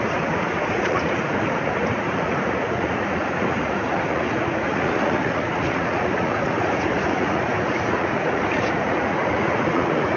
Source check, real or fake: fake